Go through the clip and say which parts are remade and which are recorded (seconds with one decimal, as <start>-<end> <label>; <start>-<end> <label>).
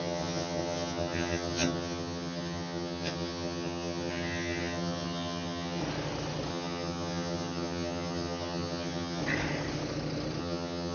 0.0-5.8 remade; 5.8-6.5 recorded; 6.5-9.2 remade; 9.2-10.4 recorded; 10.4-10.9 remade